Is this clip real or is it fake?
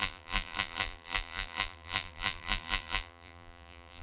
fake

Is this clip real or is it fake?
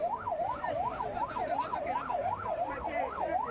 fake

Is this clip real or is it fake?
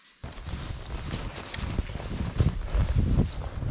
real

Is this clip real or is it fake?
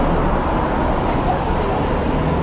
real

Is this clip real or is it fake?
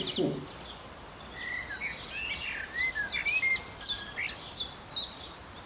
real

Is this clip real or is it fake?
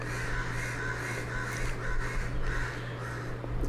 real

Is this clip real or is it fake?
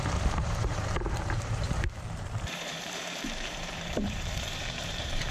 fake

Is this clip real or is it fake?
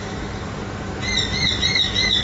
real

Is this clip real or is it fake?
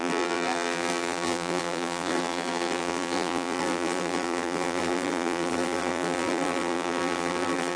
fake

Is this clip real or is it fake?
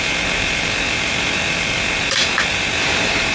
fake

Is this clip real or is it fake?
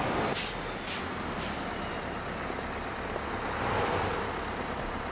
real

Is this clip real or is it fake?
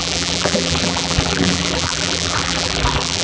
fake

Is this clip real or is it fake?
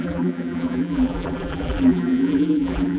fake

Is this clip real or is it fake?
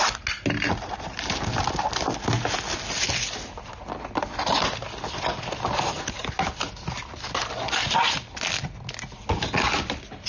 real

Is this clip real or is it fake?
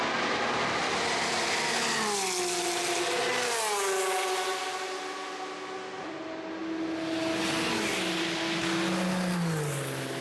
real